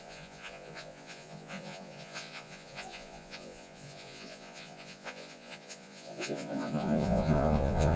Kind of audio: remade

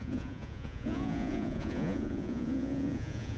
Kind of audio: remade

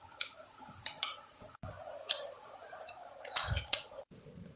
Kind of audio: remade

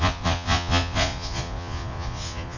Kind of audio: remade